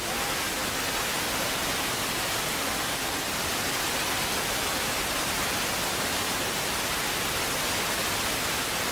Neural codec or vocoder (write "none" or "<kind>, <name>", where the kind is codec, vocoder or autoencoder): none